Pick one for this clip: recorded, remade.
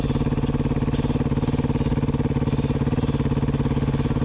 recorded